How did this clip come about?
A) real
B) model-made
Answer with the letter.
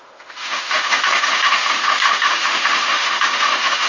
B